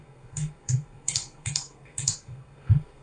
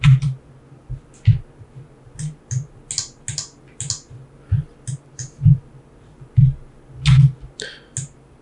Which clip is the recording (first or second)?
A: second